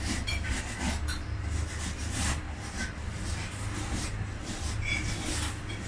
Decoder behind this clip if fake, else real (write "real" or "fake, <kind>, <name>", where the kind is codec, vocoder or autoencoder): real